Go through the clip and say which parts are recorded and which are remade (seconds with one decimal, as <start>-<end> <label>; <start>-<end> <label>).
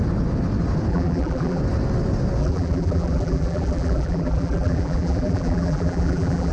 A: 0.0-0.9 recorded; 0.9-1.6 remade; 1.6-2.4 recorded; 2.4-6.5 remade